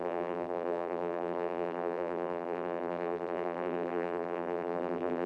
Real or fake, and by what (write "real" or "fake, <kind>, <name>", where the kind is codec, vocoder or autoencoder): fake, vocoder, BigVGAN v2